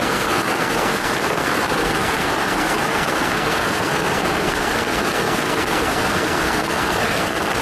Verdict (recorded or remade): remade